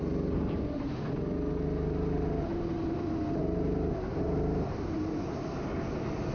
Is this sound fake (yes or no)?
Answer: no